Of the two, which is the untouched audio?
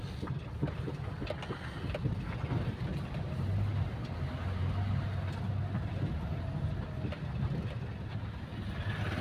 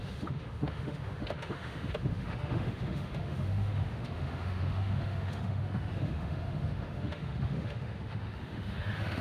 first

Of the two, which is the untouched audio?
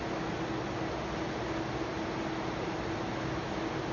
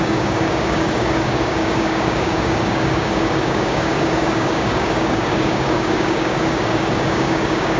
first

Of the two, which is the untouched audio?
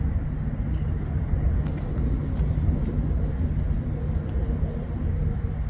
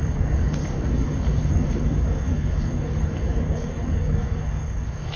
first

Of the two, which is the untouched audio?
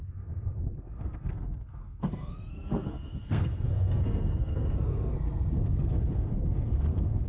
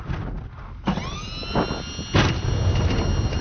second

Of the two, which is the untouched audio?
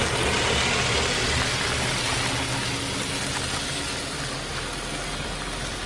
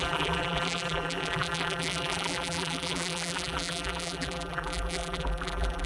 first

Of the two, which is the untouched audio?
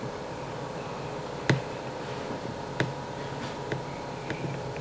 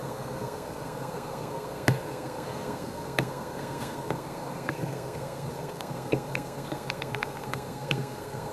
first